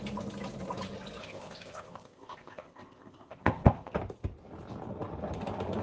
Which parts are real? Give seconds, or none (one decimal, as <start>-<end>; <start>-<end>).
0.0-1.2; 4.0-5.8